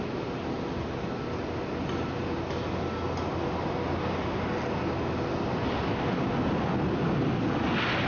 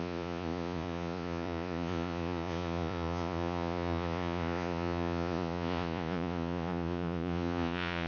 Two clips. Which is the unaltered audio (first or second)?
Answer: first